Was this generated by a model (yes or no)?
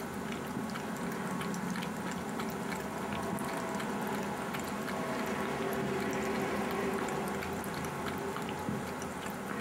no